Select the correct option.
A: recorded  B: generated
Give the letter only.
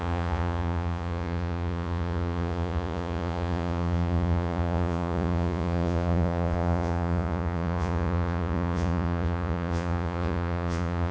B